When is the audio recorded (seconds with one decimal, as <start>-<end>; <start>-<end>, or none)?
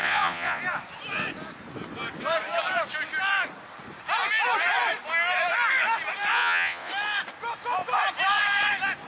0.6-6.3; 6.9-9.1